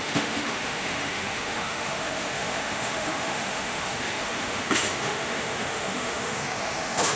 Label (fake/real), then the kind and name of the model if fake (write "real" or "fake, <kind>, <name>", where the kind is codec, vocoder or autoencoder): fake, autoencoder, DAC-VAE